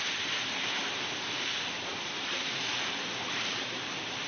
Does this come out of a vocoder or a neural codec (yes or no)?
yes